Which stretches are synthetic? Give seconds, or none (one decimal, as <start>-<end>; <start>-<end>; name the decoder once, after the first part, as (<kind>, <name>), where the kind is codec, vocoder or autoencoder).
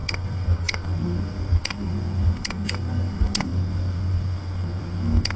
0.0-5.4 (codec, SNAC)